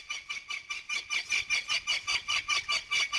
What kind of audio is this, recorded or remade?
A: recorded